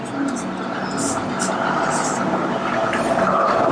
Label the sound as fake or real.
real